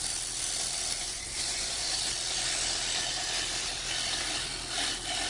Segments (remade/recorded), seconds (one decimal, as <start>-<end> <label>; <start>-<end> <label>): 0.0-1.0 recorded; 1.0-2.0 remade; 2.0-5.3 recorded